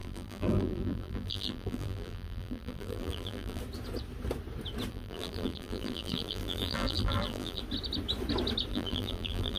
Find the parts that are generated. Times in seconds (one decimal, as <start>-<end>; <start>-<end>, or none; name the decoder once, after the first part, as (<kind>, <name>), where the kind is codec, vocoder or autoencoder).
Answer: 0.0-3.6 (vocoder, BigVGAN v2); 4.9-7.6; 8.7-9.6